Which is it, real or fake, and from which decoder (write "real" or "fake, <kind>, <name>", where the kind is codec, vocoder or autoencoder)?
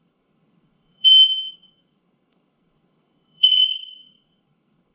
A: fake, codec, SNAC